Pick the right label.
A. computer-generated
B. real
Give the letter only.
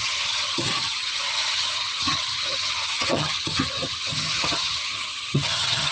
A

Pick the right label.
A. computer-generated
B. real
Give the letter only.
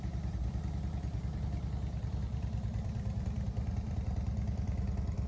A